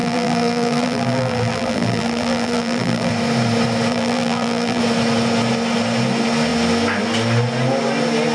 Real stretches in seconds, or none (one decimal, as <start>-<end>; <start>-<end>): 3.1-3.9; 4.8-8.3

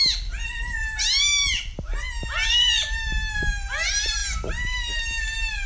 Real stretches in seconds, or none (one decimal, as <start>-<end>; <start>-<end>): 0.0-5.7

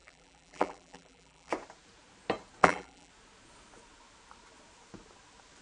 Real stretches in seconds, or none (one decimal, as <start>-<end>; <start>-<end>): 1.5-2.6; 3.1-5.6

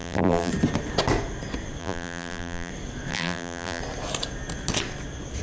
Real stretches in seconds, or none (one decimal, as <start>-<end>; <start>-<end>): 0.5-1.8; 2.7-3.1; 3.8-5.4

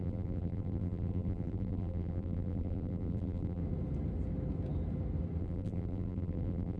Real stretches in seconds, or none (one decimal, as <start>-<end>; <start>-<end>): 3.6-5.4

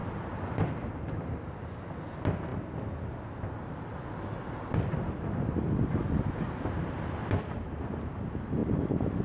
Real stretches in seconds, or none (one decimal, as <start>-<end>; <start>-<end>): 1.3-9.2